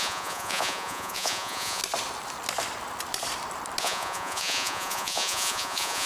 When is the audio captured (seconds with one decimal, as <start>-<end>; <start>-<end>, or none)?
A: 1.8-3.8